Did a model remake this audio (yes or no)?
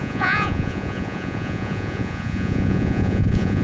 yes